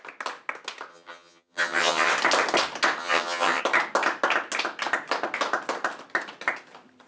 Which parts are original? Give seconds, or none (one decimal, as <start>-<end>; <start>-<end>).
0.0-0.9; 2.1-3.0; 3.6-7.1

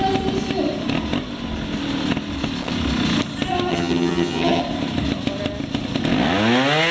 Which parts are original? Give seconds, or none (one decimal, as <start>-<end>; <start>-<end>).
0.0-3.7; 4.6-6.9

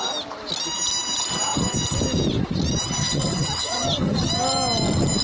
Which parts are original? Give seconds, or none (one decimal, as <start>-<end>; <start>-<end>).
0.0-3.0; 4.3-5.2